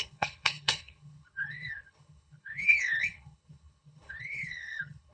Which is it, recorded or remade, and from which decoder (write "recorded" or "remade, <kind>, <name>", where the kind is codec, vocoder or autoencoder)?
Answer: remade, codec, HILCodec